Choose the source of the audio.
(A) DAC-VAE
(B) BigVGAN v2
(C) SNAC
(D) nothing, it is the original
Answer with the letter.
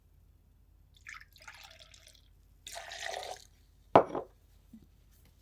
D